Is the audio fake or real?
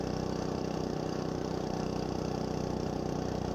fake